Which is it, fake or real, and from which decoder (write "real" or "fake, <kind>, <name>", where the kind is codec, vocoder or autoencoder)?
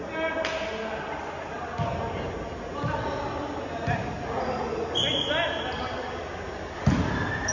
real